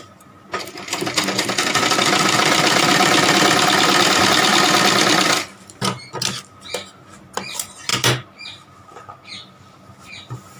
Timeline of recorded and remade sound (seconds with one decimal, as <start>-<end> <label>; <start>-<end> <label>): 0.0-10.6 recorded